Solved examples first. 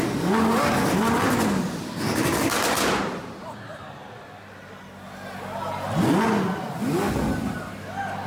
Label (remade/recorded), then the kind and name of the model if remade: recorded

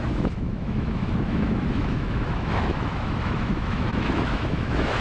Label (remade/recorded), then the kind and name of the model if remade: remade, autoencoder, DAC-VAE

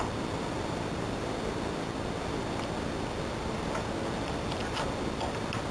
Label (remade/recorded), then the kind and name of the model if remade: recorded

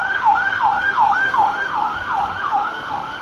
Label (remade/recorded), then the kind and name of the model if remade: remade, autoencoder, DAC-VAE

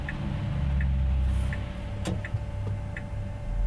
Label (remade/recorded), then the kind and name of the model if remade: recorded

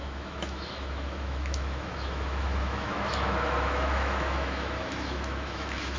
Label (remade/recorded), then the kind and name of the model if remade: remade, autoencoder, DAC-VAE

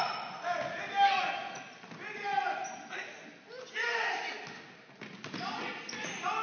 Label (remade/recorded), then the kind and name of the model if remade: recorded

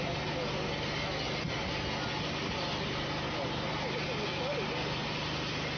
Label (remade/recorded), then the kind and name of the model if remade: recorded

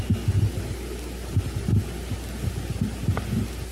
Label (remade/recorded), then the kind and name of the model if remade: recorded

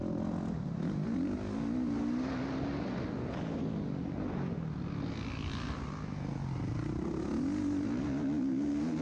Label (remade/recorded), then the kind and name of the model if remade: recorded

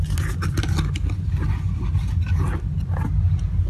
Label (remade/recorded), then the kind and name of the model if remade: recorded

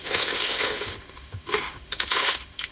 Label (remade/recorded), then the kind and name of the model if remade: remade, autoencoder, DAC-VAE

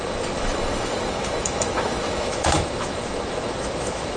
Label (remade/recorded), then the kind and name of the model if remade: remade, autoencoder, DAC-VAE